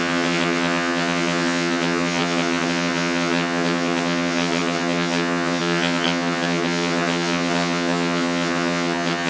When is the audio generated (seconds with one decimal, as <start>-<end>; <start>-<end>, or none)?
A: 0.0-9.3